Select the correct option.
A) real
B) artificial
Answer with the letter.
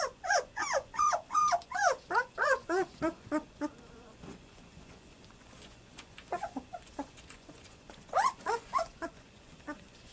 B